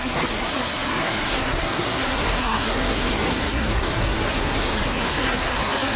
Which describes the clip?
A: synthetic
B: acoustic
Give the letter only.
A